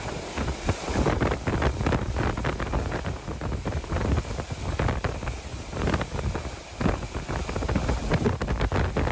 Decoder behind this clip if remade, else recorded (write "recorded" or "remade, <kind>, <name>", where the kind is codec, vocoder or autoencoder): recorded